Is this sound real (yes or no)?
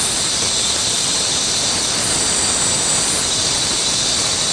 yes